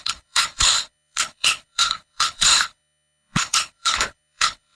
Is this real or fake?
fake